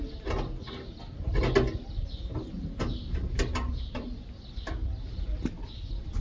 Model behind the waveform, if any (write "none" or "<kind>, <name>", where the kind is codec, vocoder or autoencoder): none